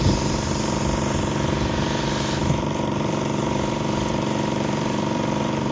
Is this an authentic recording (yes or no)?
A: no